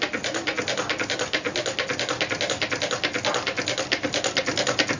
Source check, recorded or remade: recorded